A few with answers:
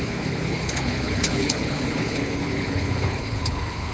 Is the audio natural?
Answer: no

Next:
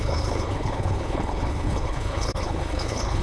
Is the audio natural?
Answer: no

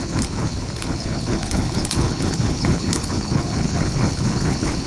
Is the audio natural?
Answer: no